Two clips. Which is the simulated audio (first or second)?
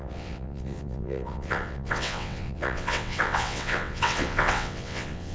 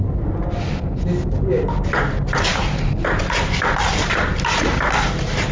first